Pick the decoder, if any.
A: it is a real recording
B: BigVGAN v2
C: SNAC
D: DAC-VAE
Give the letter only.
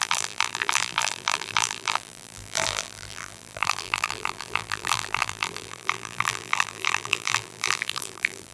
B